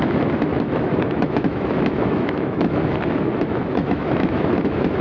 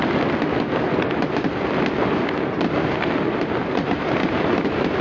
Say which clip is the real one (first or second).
second